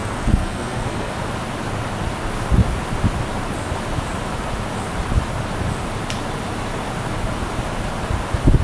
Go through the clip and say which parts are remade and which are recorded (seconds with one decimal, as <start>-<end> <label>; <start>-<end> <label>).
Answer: 0.0-1.1 remade; 1.1-8.6 recorded